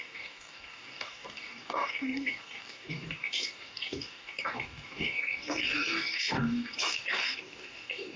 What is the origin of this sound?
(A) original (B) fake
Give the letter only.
B